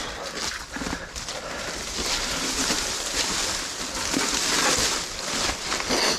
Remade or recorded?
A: recorded